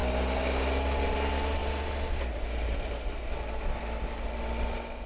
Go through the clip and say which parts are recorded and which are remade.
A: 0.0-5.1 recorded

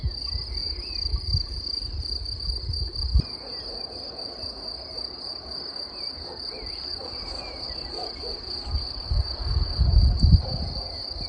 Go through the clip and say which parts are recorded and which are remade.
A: 0.0-11.3 recorded

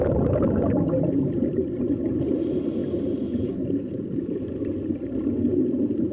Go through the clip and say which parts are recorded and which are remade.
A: 0.0-6.1 recorded

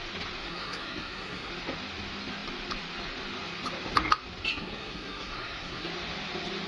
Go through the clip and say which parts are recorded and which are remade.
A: 0.0-0.4 recorded; 0.4-1.5 remade; 1.5-4.5 recorded; 4.5-5.9 remade; 5.9-6.7 recorded